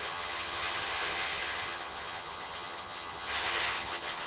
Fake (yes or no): yes